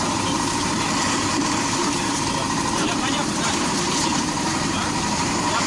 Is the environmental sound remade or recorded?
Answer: remade